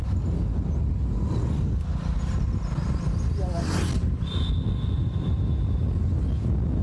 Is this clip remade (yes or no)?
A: no